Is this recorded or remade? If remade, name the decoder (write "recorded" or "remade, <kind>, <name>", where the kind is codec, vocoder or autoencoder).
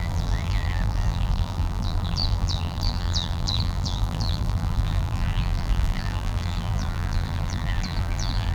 remade, vocoder, BigVGAN v2